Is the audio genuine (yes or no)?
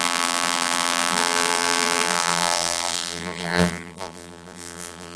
no